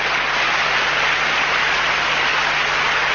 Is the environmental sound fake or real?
real